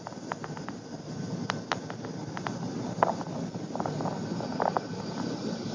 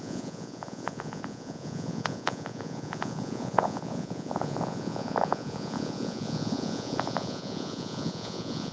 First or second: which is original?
first